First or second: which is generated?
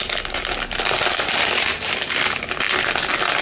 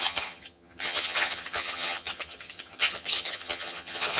second